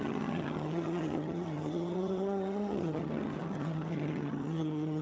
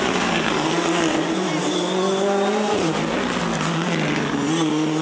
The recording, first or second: second